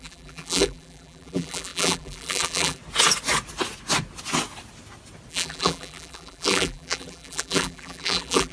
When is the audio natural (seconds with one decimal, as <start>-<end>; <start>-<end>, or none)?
2.8-5.3